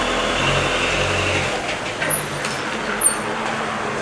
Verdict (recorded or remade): recorded